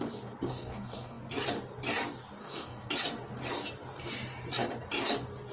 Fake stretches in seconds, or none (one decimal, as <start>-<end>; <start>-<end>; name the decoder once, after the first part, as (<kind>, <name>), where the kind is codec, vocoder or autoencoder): 0.5-1.2 (codec, SNAC); 2.4-2.9